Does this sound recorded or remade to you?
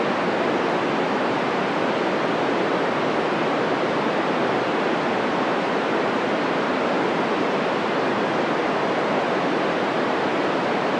remade